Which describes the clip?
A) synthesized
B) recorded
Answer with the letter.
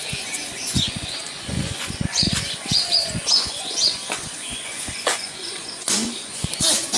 A